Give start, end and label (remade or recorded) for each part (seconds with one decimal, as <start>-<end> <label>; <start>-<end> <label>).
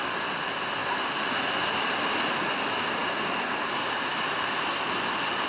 0.0-5.5 recorded